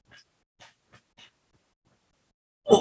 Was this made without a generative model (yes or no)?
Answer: yes